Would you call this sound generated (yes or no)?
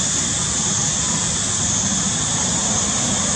no